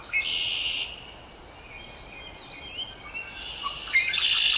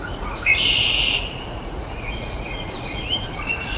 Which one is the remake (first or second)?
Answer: second